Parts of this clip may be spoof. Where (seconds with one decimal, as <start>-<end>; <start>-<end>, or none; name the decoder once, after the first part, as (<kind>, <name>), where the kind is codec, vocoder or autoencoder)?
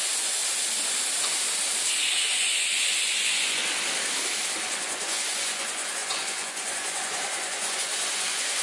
0.0-0.4 (vocoder, Vocos); 2.1-3.6; 4.6-8.6